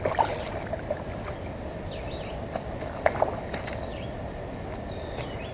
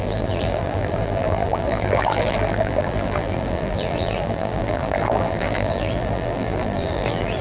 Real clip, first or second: first